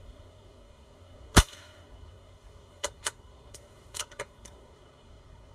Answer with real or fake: fake